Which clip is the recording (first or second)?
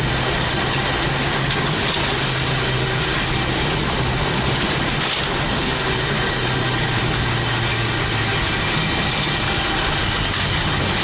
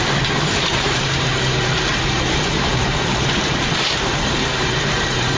first